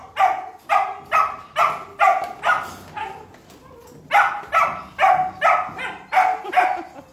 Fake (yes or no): no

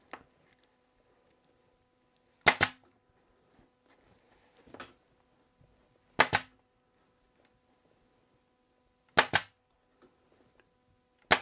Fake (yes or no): no